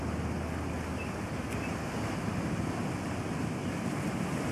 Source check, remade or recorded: recorded